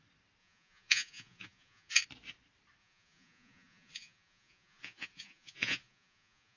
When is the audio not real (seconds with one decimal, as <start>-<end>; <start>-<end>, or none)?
0.4-2.0; 2.8-6.6